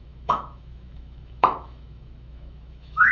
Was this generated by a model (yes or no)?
yes